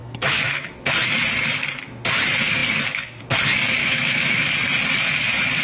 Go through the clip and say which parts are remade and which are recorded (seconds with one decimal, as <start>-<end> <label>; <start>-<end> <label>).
0.0-0.7 remade; 0.7-3.8 recorded; 3.8-4.5 remade; 4.5-5.6 recorded

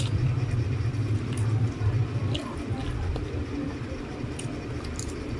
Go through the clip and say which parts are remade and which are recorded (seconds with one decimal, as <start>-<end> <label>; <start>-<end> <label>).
0.0-5.4 recorded

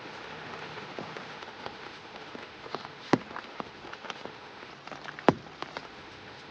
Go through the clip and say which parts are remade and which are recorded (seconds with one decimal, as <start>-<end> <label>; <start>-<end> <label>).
0.0-4.7 remade; 4.7-5.8 recorded; 5.8-6.5 remade

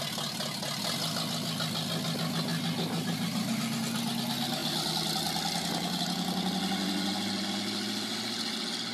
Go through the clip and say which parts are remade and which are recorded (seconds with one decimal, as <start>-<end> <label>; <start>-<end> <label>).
0.0-8.9 recorded

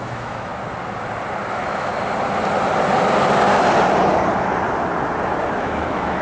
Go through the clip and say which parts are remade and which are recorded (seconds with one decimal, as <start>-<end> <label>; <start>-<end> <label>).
0.0-0.5 remade; 0.5-1.5 recorded; 1.5-1.9 remade; 1.9-5.6 recorded; 5.6-6.2 remade

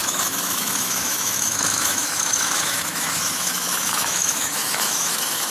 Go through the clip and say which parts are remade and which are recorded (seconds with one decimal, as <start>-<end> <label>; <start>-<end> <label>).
0.0-5.5 remade